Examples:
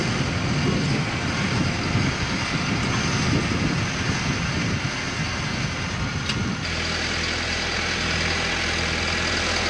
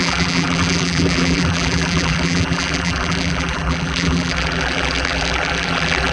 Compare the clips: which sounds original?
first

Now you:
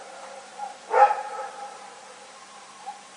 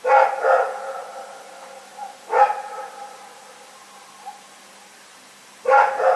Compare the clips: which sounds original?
second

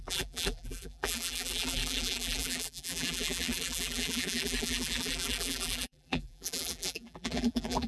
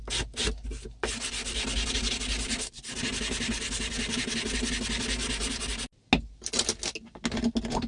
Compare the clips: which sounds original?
second